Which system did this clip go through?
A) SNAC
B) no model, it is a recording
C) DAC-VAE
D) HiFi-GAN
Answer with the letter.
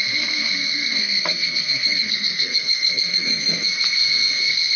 A